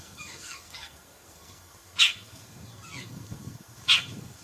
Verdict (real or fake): fake